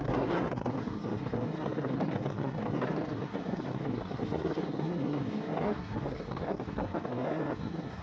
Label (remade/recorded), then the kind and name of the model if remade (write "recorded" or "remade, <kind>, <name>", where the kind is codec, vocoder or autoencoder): remade, codec, SNAC